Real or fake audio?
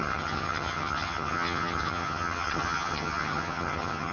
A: fake